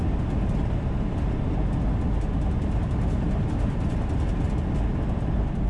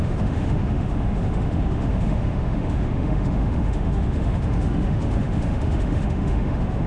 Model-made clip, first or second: second